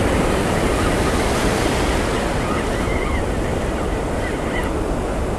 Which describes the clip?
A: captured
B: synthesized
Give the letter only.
A